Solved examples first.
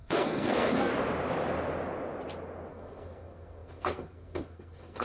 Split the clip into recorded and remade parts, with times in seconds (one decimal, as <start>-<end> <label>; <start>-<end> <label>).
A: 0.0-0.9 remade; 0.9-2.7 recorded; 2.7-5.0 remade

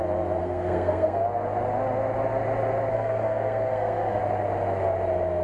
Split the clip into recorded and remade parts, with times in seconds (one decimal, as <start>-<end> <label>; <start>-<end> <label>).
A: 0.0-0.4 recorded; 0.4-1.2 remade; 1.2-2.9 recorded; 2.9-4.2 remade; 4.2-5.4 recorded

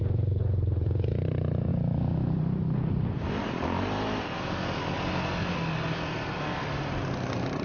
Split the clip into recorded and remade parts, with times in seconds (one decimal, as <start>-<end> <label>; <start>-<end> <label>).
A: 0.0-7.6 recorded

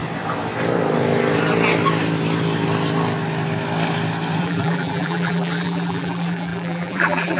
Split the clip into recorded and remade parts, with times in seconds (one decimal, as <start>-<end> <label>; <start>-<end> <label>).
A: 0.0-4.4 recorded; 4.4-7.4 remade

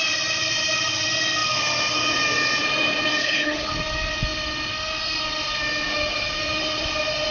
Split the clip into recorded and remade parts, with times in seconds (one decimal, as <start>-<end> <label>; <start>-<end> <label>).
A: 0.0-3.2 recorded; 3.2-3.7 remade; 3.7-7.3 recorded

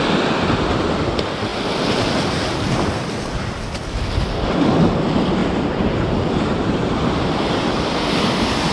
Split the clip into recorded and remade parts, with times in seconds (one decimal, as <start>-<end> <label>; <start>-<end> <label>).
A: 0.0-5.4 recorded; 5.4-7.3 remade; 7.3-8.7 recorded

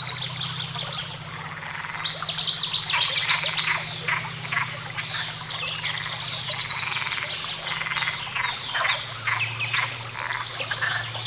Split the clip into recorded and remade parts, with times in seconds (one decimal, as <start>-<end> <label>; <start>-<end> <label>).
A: 0.0-11.3 recorded